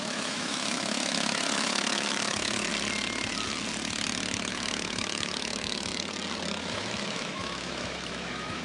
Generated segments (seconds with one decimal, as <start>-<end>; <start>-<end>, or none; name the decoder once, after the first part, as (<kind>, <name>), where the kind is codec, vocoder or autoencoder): 0.0-2.7 (autoencoder, DAC-VAE); 4.5-5.9; 6.6-8.6